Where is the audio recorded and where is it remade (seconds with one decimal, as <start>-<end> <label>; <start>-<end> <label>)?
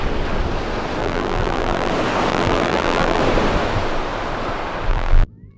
0.0-1.0 recorded; 1.0-1.9 remade; 1.9-2.3 recorded; 2.3-3.2 remade; 3.2-4.9 recorded; 4.9-5.6 remade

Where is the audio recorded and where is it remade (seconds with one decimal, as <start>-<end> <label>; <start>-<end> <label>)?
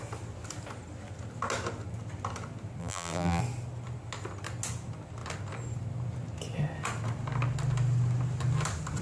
0.0-2.8 recorded; 2.8-3.4 remade; 3.4-9.0 recorded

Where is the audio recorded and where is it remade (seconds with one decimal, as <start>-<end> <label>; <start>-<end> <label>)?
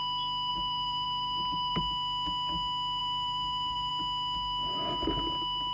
0.0-0.5 recorded; 0.5-1.8 remade; 1.8-3.0 recorded; 3.0-3.9 remade; 3.9-5.7 recorded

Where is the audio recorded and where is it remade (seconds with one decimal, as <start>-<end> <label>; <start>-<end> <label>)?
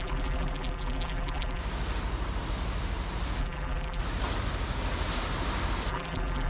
0.0-1.6 remade; 1.6-3.4 recorded; 3.4-4.0 remade; 4.0-5.9 recorded; 5.9-6.5 remade